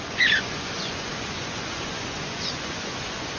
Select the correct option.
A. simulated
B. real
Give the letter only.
A